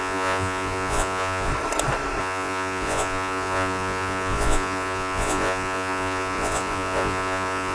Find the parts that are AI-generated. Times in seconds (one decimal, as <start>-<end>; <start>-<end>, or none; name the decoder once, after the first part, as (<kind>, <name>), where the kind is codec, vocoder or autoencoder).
0.0-1.5 (vocoder, Vocos); 2.2-7.7